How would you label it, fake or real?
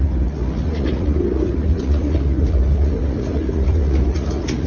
fake